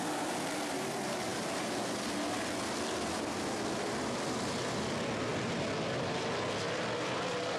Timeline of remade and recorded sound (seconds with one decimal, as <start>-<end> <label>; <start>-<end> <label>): 0.0-7.6 recorded